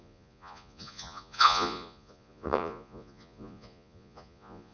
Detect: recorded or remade remade